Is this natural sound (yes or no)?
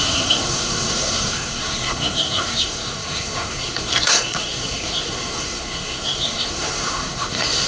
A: no